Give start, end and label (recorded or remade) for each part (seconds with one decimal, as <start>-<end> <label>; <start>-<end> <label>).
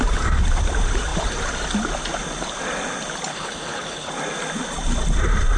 0.0-3.3 recorded; 3.3-4.1 remade; 4.1-5.6 recorded